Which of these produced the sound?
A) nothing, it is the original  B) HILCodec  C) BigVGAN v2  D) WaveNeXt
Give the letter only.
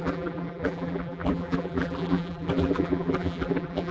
C